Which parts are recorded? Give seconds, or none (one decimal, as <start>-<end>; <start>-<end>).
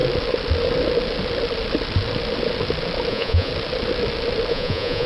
0.0-3.1; 3.5-4.5